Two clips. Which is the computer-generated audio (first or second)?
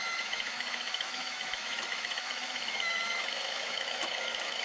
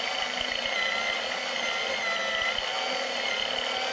first